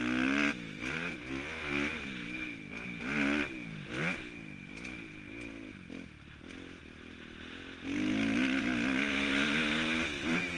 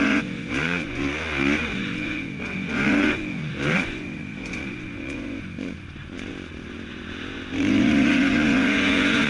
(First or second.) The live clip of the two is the first